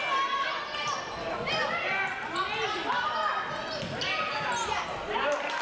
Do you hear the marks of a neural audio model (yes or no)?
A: no